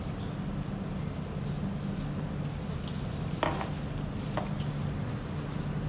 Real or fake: real